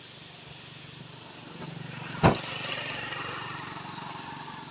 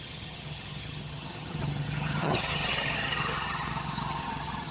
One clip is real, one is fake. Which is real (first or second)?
first